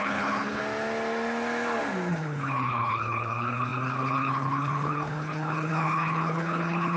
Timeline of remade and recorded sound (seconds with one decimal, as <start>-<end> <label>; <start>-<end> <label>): 0.0-0.6 remade; 0.6-2.1 recorded; 2.1-7.0 remade